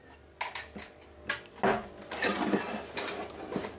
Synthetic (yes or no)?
no